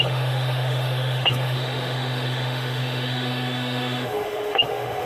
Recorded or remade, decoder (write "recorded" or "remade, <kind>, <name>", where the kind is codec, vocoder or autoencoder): remade, autoencoder, DAC-VAE